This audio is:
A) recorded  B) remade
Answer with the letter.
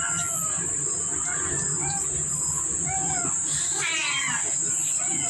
A